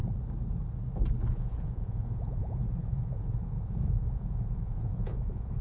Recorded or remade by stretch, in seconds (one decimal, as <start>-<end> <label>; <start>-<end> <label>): 0.0-1.3 recorded; 1.3-5.6 remade